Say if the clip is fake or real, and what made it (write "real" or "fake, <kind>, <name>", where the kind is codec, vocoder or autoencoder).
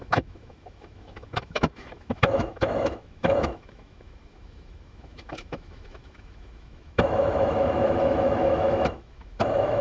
fake, autoencoder, DAC-VAE